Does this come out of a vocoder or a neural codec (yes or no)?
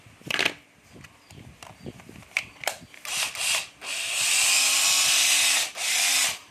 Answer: no